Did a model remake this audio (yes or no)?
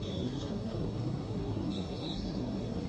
yes